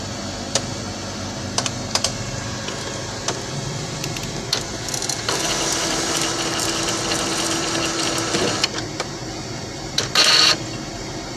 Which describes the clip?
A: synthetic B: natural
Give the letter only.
A